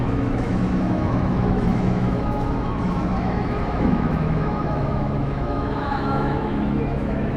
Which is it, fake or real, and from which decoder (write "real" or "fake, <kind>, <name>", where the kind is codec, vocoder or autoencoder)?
fake, autoencoder, DAC-VAE